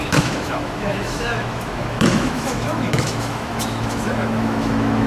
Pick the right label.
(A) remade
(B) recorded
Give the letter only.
A